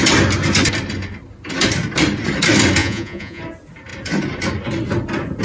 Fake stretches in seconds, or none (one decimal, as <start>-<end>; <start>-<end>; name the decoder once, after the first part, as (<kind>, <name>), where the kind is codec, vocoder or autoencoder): 2.8-3.4 (vocoder, Vocos)